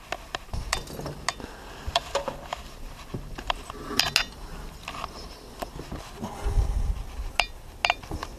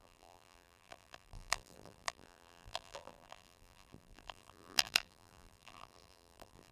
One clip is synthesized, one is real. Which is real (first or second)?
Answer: first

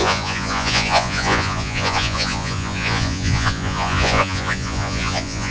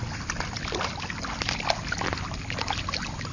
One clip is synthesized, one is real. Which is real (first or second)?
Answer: second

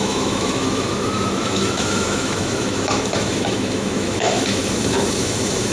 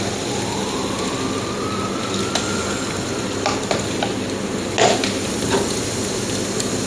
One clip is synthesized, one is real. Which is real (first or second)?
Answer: second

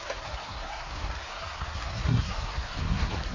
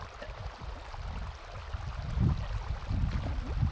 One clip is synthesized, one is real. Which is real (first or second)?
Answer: second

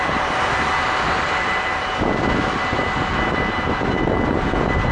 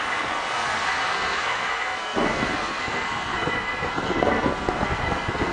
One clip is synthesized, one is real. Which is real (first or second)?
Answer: first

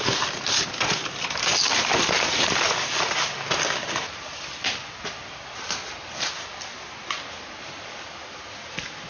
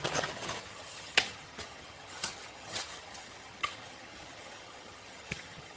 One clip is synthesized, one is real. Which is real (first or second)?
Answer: first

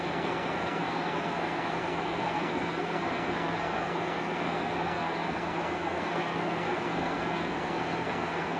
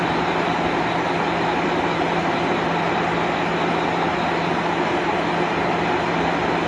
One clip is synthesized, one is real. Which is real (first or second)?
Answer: second